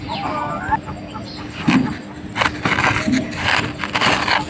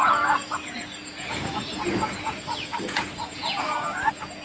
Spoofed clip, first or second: second